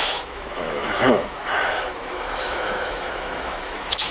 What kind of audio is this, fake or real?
fake